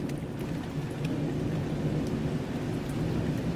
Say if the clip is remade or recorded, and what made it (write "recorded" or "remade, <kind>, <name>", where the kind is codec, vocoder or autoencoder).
recorded